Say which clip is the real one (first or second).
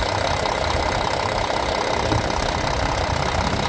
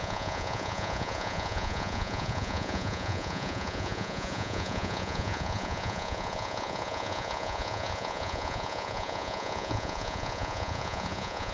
first